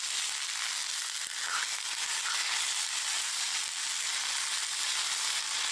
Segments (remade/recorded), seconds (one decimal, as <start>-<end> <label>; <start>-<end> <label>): 0.0-5.7 recorded